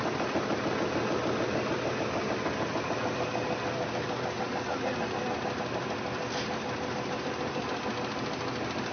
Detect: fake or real real